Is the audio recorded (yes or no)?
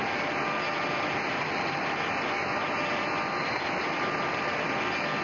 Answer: yes